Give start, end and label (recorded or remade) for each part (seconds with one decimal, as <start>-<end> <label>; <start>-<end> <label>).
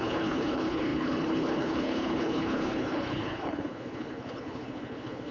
0.0-5.3 remade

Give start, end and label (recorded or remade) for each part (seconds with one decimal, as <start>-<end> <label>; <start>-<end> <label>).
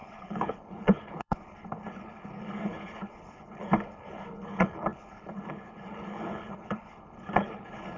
0.0-8.0 remade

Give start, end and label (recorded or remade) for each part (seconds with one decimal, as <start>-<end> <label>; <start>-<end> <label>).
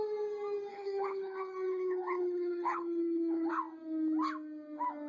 0.0-0.7 recorded; 0.7-3.5 remade; 3.5-5.1 recorded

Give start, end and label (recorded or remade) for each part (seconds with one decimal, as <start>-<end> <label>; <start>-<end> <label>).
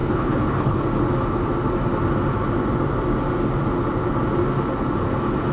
0.0-0.8 remade; 0.8-5.5 recorded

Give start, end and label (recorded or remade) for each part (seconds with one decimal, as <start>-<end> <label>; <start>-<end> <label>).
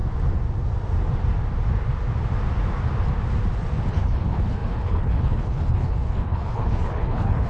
0.0-3.9 recorded; 3.9-7.5 remade